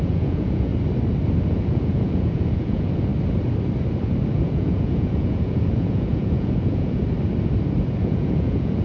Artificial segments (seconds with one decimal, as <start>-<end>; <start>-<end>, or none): 0.0-0.7; 1.5-3.1; 4.3-7.0; 8.0-8.8